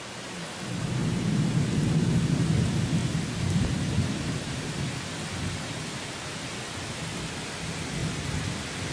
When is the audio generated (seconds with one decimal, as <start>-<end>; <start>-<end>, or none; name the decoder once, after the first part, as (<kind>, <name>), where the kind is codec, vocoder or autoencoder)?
none